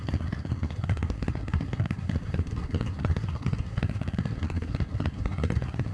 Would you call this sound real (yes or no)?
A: no